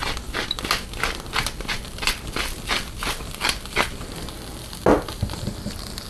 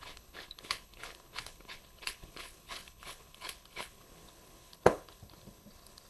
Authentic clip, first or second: first